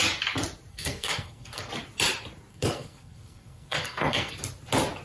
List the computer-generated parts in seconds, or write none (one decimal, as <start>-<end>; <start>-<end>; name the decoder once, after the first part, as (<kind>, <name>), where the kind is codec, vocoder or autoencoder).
0.7-1.7 (codec, SNAC); 2.5-4.3